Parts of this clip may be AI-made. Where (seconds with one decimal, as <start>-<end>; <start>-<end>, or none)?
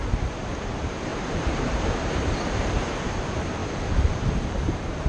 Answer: 0.0-5.1